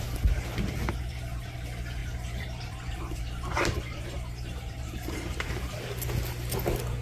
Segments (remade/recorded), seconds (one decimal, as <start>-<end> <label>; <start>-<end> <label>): 0.0-2.0 recorded; 2.0-5.7 remade; 5.7-7.0 recorded